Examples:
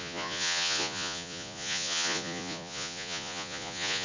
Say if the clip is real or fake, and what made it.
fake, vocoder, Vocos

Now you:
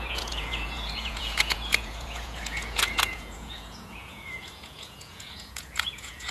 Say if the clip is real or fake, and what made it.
fake, vocoder, Vocos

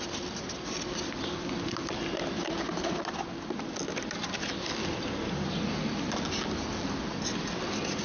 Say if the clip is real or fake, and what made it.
real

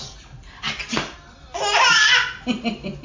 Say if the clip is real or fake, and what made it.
real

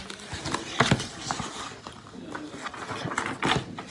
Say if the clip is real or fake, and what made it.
real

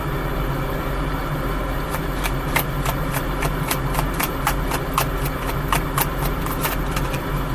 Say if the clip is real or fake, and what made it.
real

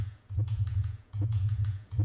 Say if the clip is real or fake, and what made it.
fake, vocoder, Vocos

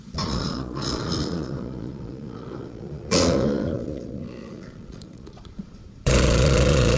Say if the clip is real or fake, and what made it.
fake, vocoder, Vocos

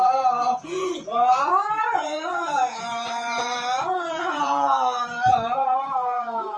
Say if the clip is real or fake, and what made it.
fake, vocoder, Vocos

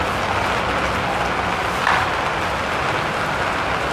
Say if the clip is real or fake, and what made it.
real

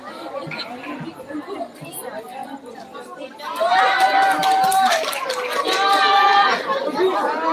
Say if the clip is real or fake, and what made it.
real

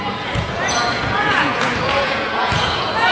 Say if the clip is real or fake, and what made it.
fake, vocoder, Vocos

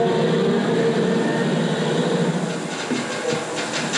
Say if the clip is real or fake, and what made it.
real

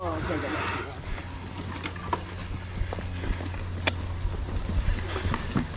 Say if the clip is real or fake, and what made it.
real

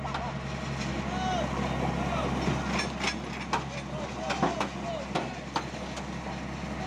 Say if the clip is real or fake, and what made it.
real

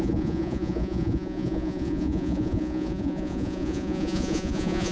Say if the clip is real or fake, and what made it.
fake, vocoder, Vocos